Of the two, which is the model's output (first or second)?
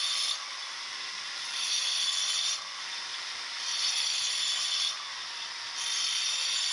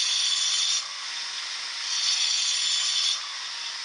first